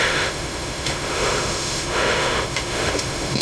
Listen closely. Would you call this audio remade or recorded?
remade